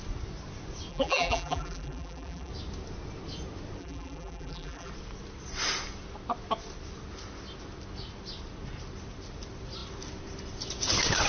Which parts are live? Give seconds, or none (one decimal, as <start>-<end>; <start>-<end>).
0.0-0.9; 2.5-3.8; 4.9-11.3